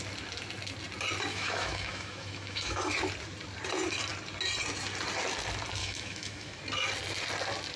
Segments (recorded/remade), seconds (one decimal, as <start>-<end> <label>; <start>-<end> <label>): 0.0-1.3 recorded; 1.3-2.9 remade; 2.9-5.8 recorded; 5.8-6.6 remade; 6.6-7.8 recorded